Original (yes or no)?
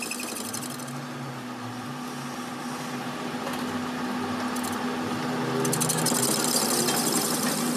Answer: yes